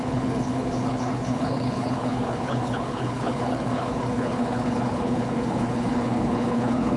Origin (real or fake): fake